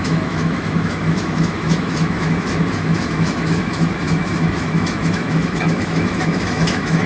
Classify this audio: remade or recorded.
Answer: remade